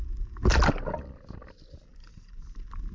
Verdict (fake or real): real